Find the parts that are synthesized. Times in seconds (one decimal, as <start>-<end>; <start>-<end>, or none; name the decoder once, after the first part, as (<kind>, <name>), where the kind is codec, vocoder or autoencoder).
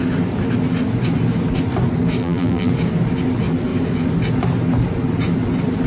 2.2-2.7 (vocoder, BigVGAN v2)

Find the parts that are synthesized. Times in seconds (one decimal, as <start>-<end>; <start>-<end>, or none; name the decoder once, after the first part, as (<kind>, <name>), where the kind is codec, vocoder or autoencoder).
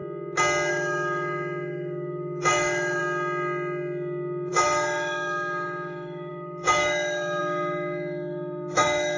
0.7-3.0 (autoencoder, DAC-VAE); 4.5-9.2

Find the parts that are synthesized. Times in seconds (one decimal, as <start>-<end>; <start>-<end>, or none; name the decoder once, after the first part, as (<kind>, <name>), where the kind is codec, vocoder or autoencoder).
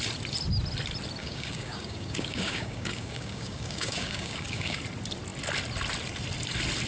1.2-4.8 (codec, DAC)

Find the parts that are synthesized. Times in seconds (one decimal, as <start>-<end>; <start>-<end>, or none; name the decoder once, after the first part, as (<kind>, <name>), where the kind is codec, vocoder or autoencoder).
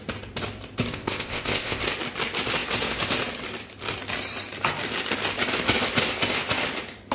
0.9-1.8 (codec, ZipCodec)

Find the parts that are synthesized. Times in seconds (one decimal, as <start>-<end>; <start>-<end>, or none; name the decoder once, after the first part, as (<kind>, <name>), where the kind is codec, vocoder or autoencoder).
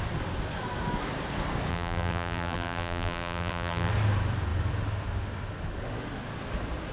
1.7-3.9 (vocoder, BigVGAN v2)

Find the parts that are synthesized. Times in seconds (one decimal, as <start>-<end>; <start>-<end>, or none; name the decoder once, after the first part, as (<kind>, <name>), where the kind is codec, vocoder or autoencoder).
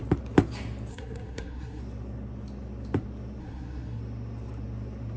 0.9-1.8 (codec, SNAC); 3.4-4.0